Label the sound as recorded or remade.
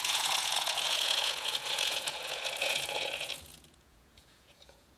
remade